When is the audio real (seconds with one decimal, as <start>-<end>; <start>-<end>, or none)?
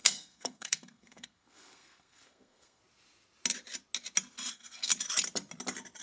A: 2.8-4.5; 4.9-6.0